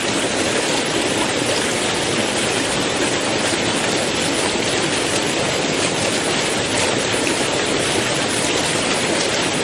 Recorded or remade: recorded